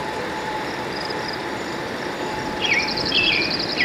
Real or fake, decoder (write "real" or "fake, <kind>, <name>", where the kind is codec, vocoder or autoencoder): fake, vocoder, BigVGAN v2